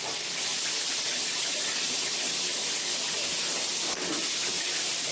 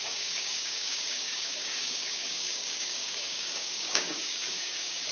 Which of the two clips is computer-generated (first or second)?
second